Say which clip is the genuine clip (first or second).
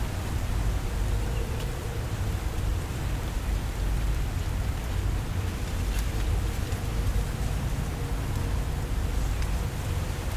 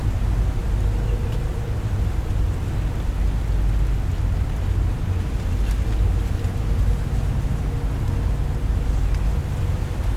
second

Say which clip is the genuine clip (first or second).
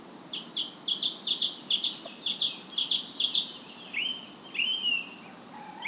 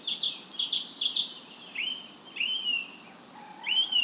first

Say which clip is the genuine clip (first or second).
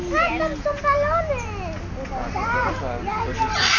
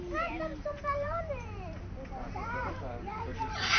first